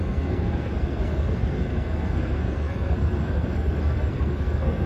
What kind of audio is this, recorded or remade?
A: remade